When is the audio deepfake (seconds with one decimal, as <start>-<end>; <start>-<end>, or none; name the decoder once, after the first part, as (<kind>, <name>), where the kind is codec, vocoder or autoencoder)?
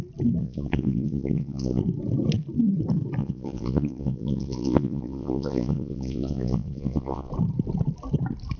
0.4-1.8 (vocoder, Vocos); 3.2-7.3